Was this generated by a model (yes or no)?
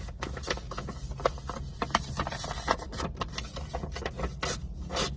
no